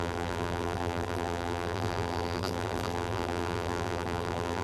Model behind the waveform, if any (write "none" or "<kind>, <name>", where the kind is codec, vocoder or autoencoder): vocoder, BigVGAN v2